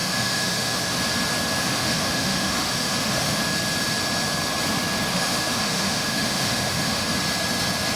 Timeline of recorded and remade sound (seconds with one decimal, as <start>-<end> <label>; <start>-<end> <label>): 0.0-1.0 remade; 1.0-1.6 recorded; 1.6-3.4 remade; 3.4-5.1 recorded; 5.1-7.1 remade; 7.1-8.0 recorded